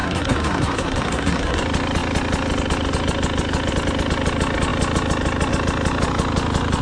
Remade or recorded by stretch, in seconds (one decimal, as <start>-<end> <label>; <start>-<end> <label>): 0.0-1.6 remade; 1.6-6.8 recorded